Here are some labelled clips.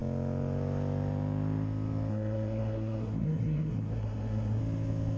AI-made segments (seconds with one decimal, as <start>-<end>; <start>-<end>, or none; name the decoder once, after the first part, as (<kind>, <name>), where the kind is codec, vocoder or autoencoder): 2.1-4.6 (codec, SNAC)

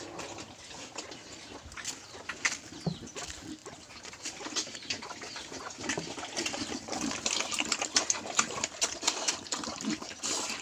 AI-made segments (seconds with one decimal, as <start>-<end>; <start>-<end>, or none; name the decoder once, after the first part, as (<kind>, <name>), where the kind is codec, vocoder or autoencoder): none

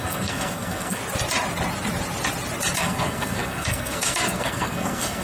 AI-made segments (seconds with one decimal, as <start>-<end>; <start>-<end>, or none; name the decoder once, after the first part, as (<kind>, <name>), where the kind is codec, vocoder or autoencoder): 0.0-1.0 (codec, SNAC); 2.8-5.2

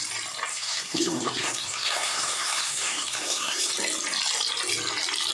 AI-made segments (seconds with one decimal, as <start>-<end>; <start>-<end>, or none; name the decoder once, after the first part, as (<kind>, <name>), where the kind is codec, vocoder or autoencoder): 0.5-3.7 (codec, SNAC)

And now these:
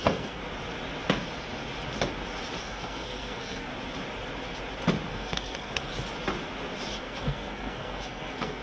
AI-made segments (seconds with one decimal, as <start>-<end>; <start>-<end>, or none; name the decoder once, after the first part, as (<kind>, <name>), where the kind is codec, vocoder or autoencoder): 0.0-0.4 (codec, SNAC); 2.6-3.7; 5.1-5.9; 7.0-8.6

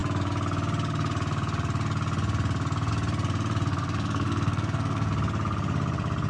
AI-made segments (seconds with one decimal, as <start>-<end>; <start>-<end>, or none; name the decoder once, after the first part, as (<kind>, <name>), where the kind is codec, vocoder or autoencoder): 3.7-5.1 (codec, SNAC)

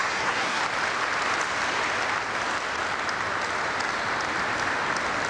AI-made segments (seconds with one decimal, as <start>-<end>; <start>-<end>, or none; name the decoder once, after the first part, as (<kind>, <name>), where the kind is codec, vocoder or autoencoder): 0.0-0.6 (codec, SNAC)

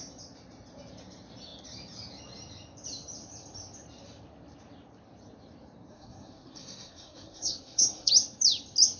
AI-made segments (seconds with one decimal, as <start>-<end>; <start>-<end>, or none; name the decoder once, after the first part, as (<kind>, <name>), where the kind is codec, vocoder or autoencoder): 5.9-8.1 (codec, SNAC)